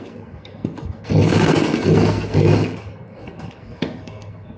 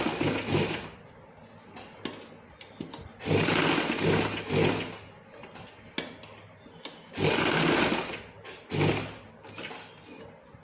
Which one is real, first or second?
second